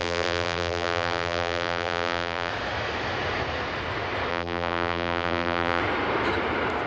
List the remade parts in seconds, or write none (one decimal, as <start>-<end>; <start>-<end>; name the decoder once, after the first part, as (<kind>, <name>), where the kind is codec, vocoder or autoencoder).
0.0-2.5 (vocoder, BigVGAN v2); 4.3-5.8